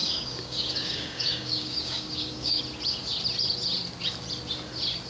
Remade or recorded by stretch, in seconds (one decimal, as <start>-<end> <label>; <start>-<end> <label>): 0.0-2.6 remade; 2.6-5.1 recorded